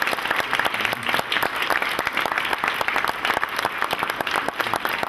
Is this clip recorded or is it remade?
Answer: recorded